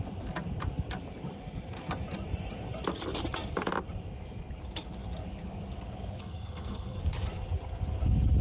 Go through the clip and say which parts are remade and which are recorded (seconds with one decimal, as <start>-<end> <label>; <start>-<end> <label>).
0.0-6.2 recorded; 6.2-7.0 remade; 7.0-8.4 recorded